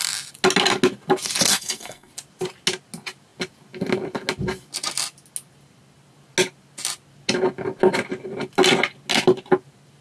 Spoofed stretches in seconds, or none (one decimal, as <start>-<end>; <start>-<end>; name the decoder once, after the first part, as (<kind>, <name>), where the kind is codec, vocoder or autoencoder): 1.5-2.1 (codec, SNAC)